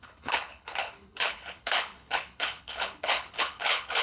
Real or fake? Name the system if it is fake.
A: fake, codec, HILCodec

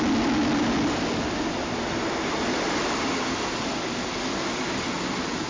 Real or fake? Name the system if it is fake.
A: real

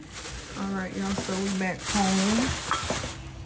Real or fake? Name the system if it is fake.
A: real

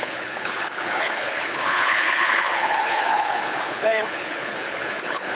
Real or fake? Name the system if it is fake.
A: fake, codec, HILCodec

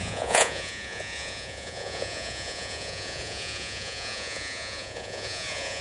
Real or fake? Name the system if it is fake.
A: fake, vocoder, Vocos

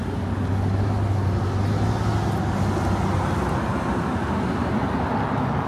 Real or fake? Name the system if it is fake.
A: real